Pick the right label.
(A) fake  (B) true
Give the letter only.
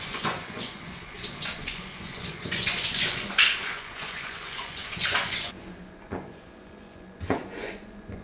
A